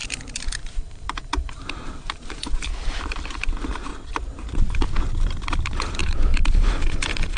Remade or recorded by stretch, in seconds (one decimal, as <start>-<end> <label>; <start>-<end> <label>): 0.0-3.9 remade; 3.9-4.7 recorded; 4.7-7.4 remade